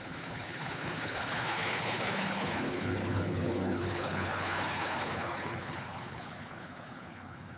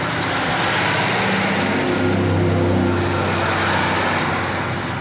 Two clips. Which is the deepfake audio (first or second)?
first